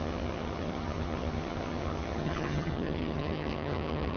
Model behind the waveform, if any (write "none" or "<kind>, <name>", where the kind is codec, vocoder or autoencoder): vocoder, HiFi-GAN